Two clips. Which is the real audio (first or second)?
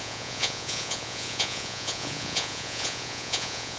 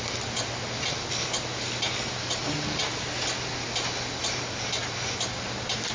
second